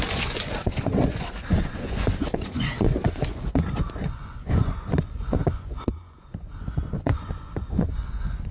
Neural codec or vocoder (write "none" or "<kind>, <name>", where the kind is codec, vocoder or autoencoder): vocoder, Vocos